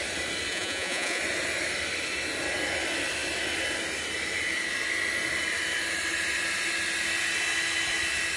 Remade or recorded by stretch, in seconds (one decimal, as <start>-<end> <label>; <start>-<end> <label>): 0.0-0.5 recorded; 0.5-1.2 remade; 1.2-8.4 recorded